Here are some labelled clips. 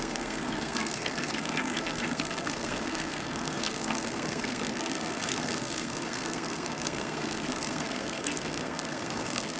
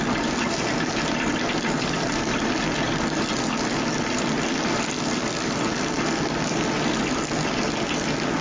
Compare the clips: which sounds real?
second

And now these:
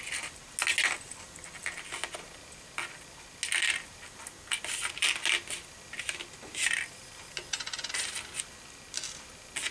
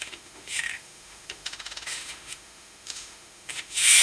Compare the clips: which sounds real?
first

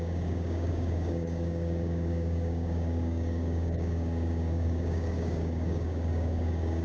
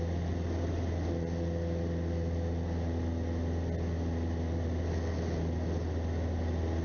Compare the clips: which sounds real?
second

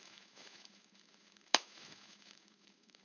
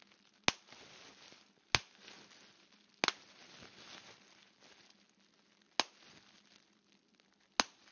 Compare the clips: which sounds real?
second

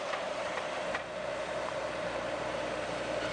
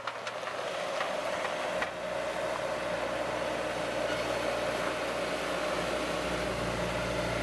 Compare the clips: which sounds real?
second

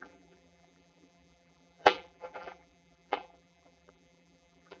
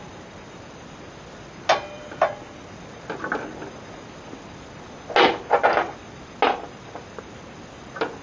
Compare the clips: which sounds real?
second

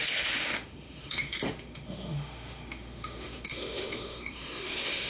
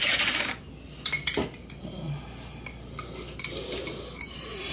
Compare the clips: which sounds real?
second